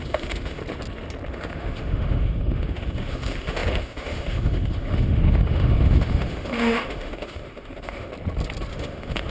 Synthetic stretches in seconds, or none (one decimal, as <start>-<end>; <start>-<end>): 0.0-0.6; 1.3-8.1; 8.7-9.3